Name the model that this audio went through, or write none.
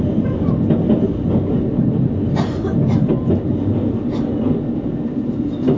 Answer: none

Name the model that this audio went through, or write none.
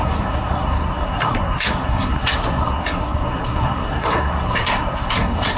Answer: codec, SNAC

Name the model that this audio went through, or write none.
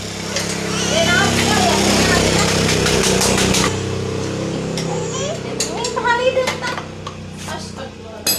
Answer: none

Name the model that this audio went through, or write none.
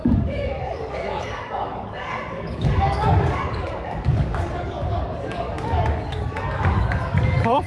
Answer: codec, DAC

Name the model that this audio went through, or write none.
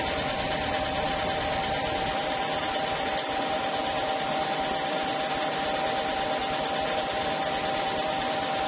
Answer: none